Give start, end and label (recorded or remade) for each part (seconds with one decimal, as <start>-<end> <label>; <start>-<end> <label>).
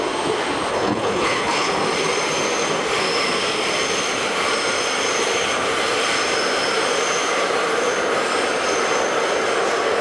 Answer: 0.0-0.7 recorded; 0.7-1.7 remade; 1.7-10.0 recorded